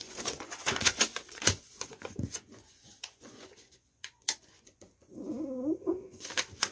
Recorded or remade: remade